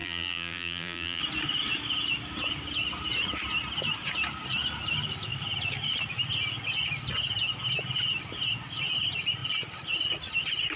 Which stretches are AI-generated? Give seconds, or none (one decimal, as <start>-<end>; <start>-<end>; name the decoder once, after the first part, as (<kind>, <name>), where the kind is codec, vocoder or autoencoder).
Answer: 0.0-1.2 (vocoder, BigVGAN v2)